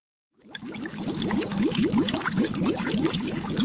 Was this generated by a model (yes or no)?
yes